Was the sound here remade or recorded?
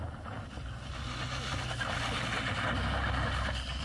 recorded